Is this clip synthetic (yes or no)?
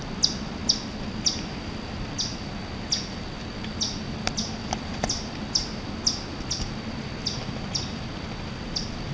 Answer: no